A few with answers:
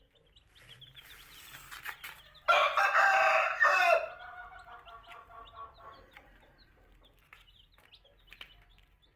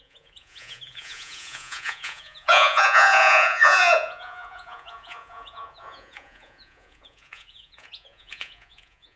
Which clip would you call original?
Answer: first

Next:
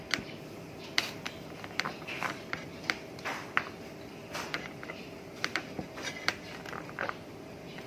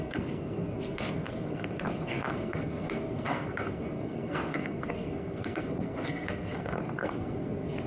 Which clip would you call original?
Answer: first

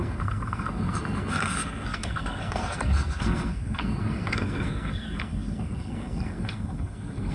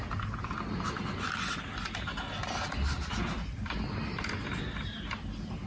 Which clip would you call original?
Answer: second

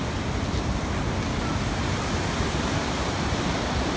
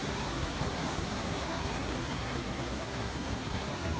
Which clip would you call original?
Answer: first